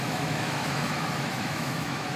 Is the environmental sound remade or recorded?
remade